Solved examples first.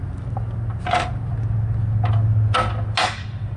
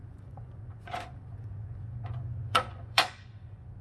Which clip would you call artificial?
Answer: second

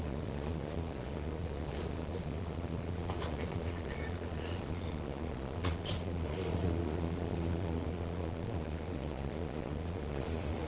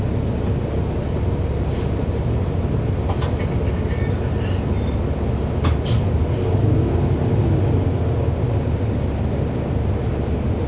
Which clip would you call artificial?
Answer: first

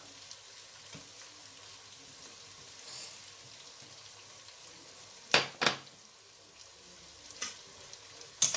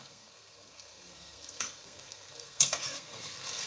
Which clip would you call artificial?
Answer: second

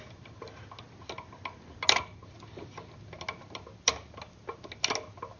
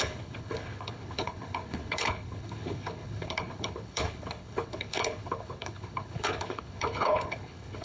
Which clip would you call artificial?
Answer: second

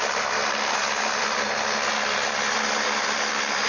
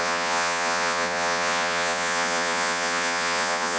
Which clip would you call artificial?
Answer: second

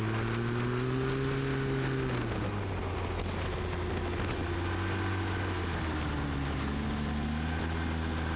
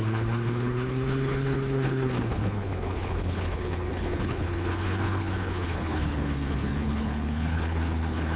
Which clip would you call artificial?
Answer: second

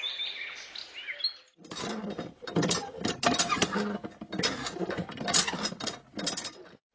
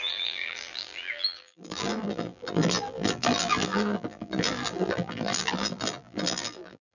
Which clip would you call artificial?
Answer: second